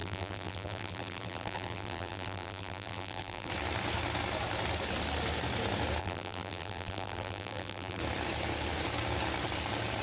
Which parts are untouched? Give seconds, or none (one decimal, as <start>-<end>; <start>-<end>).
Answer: 3.5-6.0; 8.0-10.0